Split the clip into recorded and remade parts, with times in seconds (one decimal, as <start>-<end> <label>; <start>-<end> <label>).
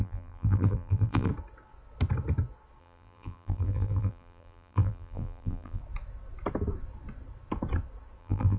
0.0-1.3 remade; 1.3-2.8 recorded; 2.8-5.8 remade; 5.8-8.2 recorded; 8.2-8.6 remade